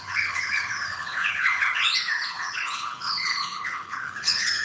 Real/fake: fake